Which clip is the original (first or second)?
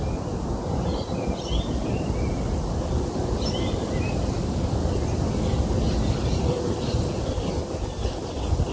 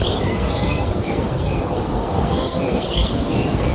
first